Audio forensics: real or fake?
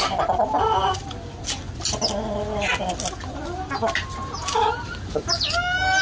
real